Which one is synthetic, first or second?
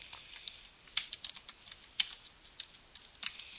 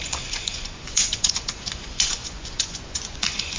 second